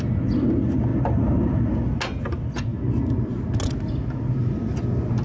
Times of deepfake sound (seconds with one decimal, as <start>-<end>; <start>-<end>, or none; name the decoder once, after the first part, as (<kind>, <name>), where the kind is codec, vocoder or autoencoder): none